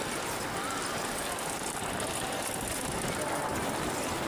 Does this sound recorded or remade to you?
recorded